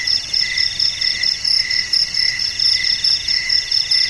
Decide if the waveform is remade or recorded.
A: recorded